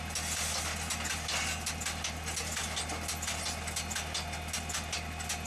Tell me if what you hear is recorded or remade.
recorded